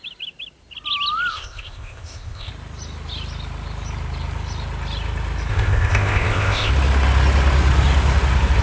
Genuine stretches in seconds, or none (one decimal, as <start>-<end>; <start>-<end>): 0.0-1.3; 2.5-5.5; 6.7-8.6